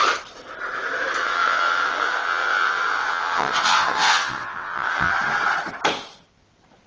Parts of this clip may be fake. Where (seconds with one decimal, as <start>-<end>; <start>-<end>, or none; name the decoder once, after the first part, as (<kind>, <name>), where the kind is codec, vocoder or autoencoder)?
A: 1.2-5.1 (vocoder, WaveNeXt)